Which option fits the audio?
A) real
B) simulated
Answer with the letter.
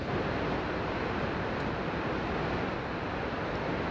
A